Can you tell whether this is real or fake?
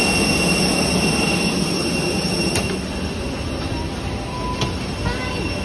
real